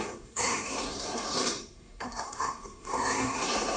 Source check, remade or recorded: remade